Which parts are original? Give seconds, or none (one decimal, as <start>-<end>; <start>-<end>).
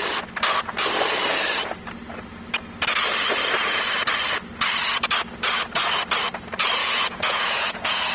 0.0-6.8